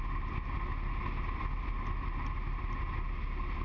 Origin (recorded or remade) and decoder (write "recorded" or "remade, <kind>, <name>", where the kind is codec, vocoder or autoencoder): recorded